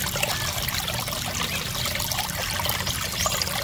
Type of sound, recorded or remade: recorded